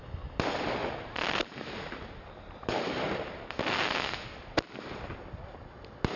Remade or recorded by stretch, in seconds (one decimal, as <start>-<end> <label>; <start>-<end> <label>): 0.0-0.8 recorded; 0.8-3.6 remade; 3.6-6.2 recorded

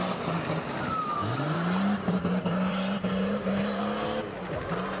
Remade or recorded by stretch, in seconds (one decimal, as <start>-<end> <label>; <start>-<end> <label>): 0.0-1.2 recorded; 1.2-3.8 remade; 3.8-5.0 recorded

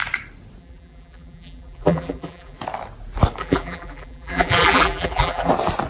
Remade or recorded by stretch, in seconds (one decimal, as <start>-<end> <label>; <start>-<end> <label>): 0.0-0.6 recorded; 0.6-2.6 remade; 2.6-3.4 recorded; 3.4-5.5 remade; 5.5-5.9 recorded

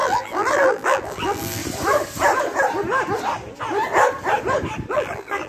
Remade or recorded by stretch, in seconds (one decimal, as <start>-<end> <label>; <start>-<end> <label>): 0.0-1.6 remade; 1.6-4.9 recorded; 4.9-5.5 remade

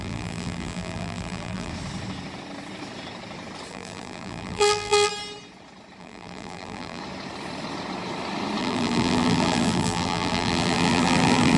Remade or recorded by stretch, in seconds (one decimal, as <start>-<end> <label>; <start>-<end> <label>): 0.0-1.7 remade; 1.7-3.7 recorded; 3.7-5.1 remade; 5.1-6.0 recorded; 6.0-7.0 remade; 7.0-8.6 recorded; 8.6-11.6 remade

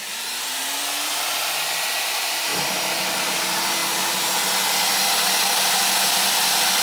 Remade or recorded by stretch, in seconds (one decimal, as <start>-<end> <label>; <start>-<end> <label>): 0.0-2.5 remade; 2.5-3.2 recorded; 3.2-3.8 remade; 3.8-6.1 recorded; 6.1-6.8 remade

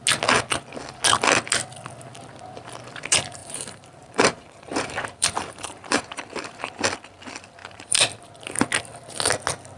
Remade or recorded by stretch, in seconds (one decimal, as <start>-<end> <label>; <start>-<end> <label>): 0.0-3.4 recorded; 3.4-6.7 remade; 6.7-7.6 recorded; 7.6-8.2 remade; 8.2-9.8 recorded

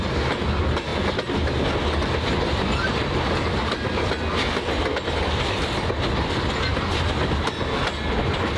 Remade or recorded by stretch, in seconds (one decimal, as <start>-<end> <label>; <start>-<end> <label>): 0.0-8.6 recorded